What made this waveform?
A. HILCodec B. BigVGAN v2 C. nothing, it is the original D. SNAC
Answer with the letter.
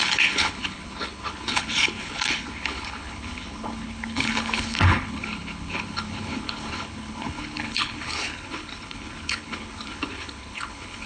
A